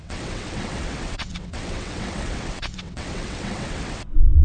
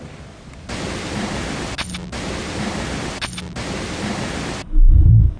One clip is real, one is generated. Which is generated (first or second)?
first